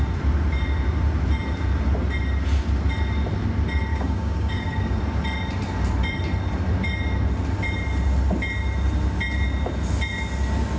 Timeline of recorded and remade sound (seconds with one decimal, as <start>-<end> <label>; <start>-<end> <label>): 0.0-3.9 recorded; 3.9-5.0 remade; 5.0-10.8 recorded